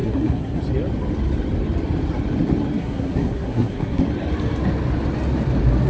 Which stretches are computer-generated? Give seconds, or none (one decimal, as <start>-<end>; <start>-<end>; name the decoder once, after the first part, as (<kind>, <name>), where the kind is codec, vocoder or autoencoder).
0.0-0.6 (codec, SNAC); 2.8-4.0